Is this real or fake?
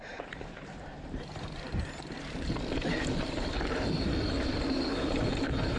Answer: fake